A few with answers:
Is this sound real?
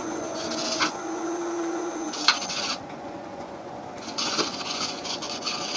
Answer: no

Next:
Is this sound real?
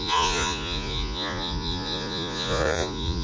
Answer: no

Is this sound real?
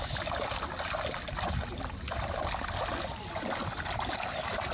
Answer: yes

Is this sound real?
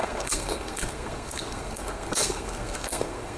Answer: no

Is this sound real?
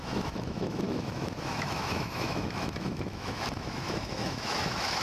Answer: no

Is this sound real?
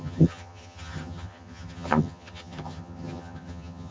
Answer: no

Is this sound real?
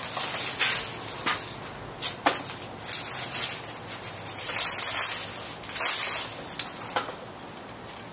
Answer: yes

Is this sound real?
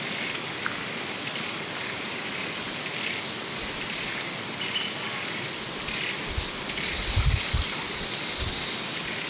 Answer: yes